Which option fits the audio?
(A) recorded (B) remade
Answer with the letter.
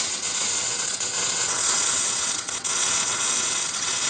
B